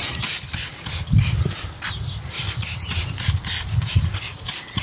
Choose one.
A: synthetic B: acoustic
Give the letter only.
B